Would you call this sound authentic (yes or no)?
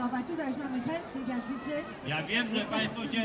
yes